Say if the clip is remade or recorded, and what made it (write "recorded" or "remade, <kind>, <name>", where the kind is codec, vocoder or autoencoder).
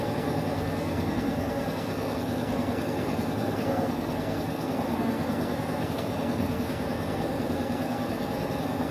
remade, codec, SNAC